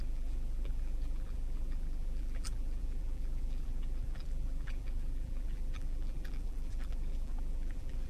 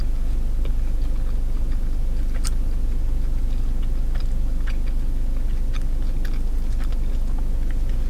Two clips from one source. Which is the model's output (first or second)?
first